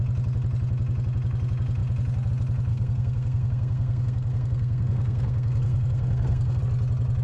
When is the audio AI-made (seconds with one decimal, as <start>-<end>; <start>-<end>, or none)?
2.7-6.6